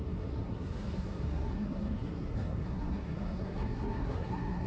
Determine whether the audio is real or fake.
fake